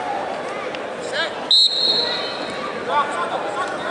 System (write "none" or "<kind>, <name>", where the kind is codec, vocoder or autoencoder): none